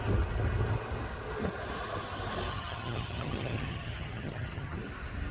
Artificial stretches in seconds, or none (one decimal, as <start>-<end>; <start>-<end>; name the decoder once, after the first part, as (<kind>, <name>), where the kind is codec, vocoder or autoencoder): 2.5-4.8 (vocoder, HiFi-GAN)